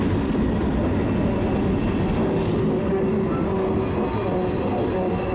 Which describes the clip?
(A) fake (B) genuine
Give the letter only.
B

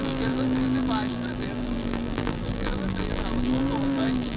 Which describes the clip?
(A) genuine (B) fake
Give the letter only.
B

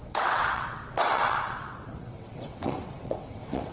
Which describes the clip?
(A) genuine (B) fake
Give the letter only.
B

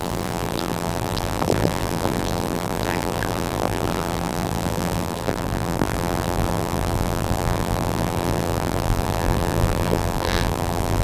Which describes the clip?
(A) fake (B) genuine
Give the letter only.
A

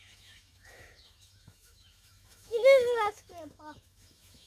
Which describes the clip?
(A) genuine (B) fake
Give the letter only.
B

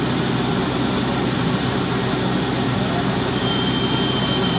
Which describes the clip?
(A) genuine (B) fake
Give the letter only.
A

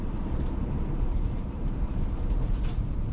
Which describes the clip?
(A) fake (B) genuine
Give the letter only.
A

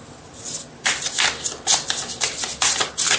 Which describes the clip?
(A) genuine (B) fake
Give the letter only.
A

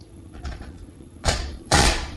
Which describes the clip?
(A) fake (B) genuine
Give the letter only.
A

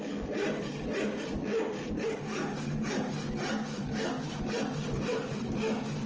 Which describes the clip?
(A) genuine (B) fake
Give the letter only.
A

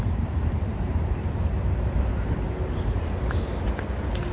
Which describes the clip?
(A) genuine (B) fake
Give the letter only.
B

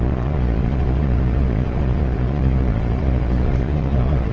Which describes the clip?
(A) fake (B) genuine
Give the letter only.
A